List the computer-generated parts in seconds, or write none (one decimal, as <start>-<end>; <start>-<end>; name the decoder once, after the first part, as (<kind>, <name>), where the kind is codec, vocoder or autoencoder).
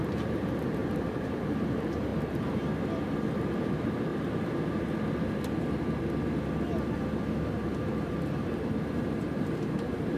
0.0-2.1 (vocoder, BigVGAN v2); 3.6-4.1; 7.5-10.2